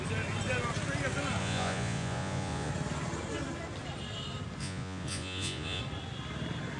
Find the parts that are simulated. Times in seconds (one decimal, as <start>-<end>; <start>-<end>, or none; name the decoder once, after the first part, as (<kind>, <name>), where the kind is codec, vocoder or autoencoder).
1.4-2.7 (vocoder, Vocos); 4.6-5.8